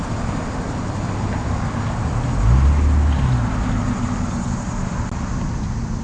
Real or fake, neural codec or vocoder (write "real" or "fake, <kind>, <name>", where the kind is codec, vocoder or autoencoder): real